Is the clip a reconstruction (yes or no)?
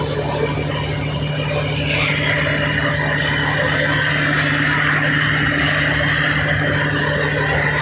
no